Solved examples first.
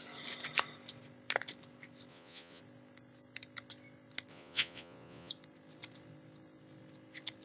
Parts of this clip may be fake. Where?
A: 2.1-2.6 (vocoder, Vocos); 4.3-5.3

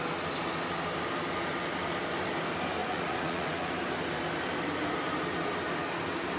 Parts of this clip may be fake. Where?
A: 2.8-3.7 (vocoder, Vocos)

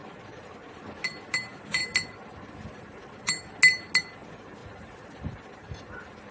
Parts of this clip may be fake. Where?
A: 0.0-0.7 (vocoder, BigVGAN v2); 4.6-6.3

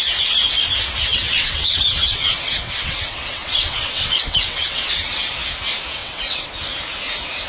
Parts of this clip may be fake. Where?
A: 1.1-5.3 (vocoder, WaveNeXt); 6.0-6.5

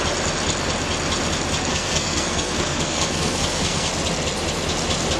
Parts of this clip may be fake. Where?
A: 1.7-3.9 (codec, SNAC)